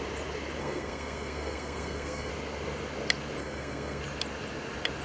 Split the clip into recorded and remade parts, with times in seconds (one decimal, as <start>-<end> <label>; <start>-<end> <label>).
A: 0.0-0.6 recorded; 0.6-2.3 remade; 2.3-3.4 recorded; 3.4-4.0 remade; 4.0-5.0 recorded